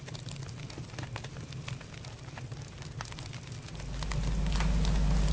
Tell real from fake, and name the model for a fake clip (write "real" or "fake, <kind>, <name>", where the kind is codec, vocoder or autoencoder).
real